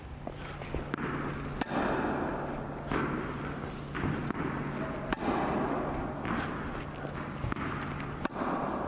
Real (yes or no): yes